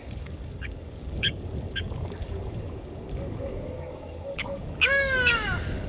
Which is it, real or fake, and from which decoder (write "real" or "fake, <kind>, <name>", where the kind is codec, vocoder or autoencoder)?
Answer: fake, codec, DAC